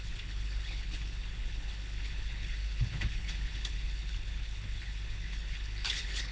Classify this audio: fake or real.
fake